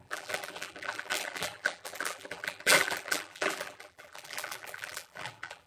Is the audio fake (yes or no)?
yes